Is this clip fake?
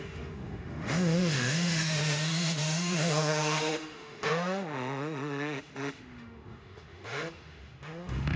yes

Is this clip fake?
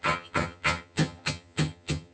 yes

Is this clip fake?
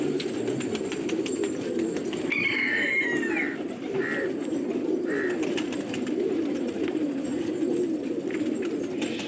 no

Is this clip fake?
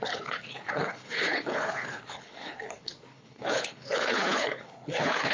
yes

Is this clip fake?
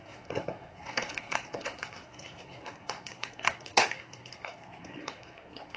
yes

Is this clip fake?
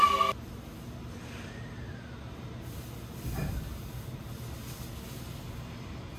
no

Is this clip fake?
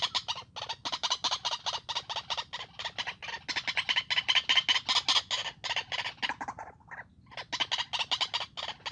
no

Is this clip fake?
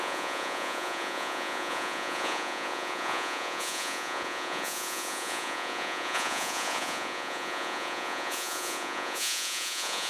yes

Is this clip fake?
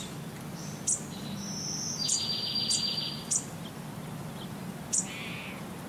no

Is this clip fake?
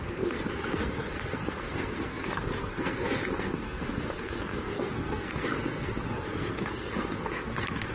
yes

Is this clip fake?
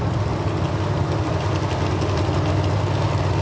no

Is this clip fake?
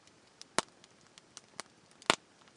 no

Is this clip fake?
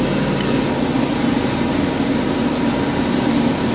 no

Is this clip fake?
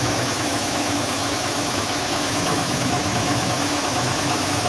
yes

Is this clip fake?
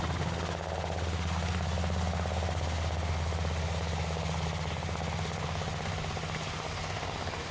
no